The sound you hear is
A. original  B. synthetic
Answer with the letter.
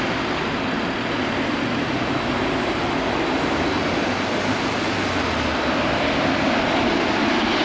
A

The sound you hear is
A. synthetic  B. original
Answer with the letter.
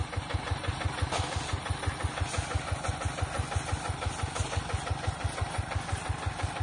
B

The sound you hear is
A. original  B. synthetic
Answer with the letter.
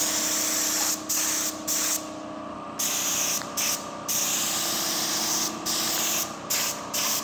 A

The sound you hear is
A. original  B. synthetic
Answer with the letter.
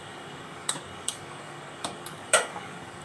B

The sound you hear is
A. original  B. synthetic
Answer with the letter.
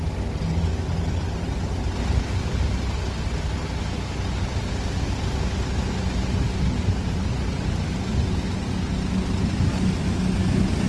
A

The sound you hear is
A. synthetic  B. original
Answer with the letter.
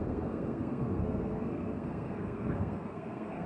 A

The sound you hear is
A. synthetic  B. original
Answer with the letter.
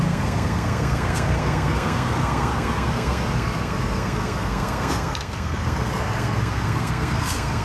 A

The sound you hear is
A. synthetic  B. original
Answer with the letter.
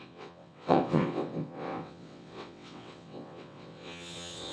A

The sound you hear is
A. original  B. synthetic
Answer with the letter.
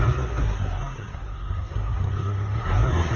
B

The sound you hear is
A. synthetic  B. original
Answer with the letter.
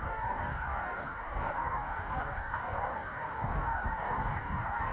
A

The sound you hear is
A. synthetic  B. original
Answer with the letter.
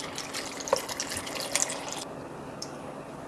B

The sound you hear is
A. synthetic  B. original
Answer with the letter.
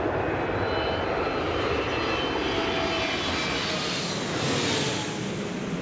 B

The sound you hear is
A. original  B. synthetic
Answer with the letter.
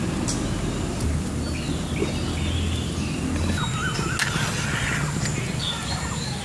A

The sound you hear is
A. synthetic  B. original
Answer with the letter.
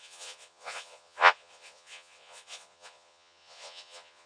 A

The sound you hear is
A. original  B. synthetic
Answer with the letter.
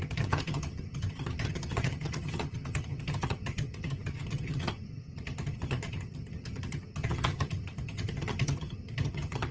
B